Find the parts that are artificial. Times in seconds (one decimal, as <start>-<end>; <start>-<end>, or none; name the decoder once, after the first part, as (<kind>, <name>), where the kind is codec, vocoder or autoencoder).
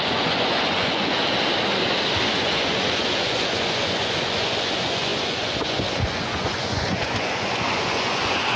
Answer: 0.0-1.2 (vocoder, Vocos); 2.2-8.6